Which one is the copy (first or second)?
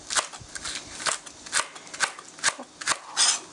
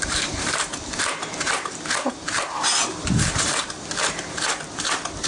second